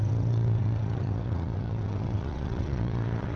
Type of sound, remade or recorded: remade